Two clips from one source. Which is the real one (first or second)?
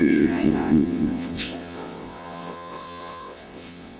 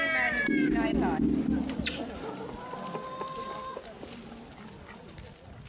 second